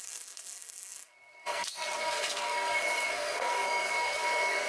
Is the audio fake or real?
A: fake